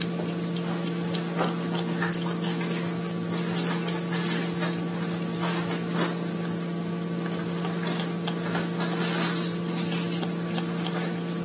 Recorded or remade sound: recorded